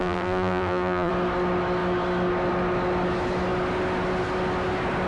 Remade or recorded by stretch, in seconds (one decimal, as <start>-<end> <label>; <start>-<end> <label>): 0.0-1.1 remade; 1.1-5.1 recorded